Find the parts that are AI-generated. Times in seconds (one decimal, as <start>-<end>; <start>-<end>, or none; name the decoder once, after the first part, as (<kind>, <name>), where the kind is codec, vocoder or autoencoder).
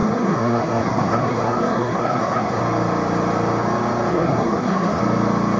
0.0-2.6 (codec, SNAC); 4.1-5.0